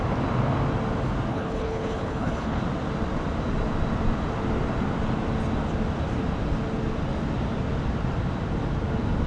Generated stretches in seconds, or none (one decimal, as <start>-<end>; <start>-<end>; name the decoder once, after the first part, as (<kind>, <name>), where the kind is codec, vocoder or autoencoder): 1.3-2.6 (codec, HILCodec)